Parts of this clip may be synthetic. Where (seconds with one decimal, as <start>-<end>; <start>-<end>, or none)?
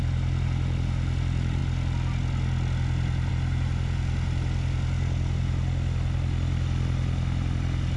none